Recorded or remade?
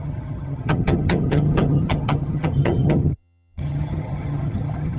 remade